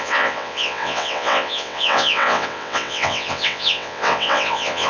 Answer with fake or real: fake